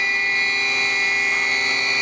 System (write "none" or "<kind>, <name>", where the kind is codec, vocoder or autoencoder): none